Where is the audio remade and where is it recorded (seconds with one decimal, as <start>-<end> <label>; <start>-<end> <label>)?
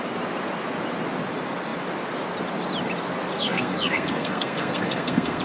0.0-3.3 recorded; 3.3-5.4 remade